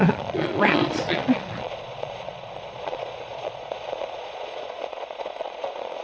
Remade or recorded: remade